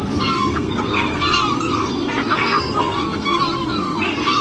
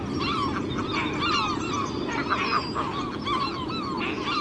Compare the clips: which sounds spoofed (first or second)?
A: first